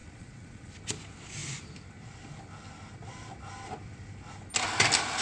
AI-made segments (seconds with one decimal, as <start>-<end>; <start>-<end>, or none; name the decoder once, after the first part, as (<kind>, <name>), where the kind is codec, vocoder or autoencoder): 0.0-0.7 (vocoder, Vocos)